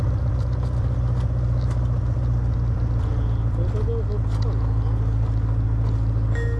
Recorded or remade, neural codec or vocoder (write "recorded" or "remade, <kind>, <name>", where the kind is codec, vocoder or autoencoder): recorded